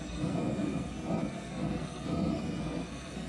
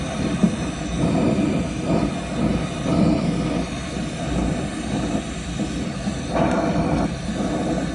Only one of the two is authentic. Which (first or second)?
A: second